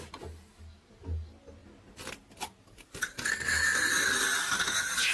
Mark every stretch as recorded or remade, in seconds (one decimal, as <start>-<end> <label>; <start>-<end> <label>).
0.0-5.1 recorded